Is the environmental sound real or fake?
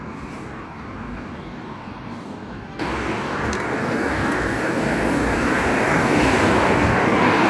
fake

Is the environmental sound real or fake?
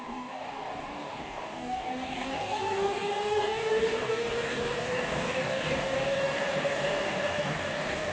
fake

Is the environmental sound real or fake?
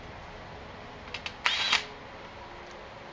real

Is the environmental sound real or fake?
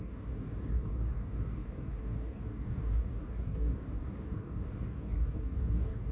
fake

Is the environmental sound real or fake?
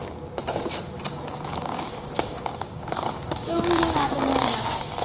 fake